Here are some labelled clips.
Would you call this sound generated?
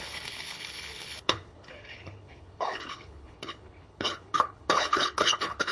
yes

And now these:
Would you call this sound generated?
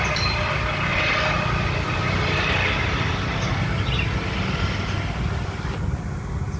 no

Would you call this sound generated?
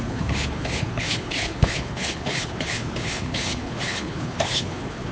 yes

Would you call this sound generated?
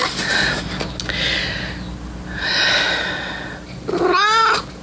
no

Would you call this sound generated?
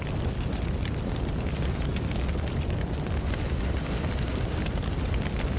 no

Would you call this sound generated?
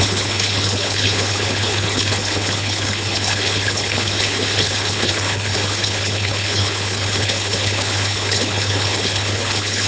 yes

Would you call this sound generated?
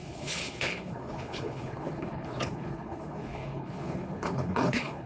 yes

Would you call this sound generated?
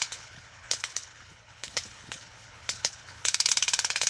yes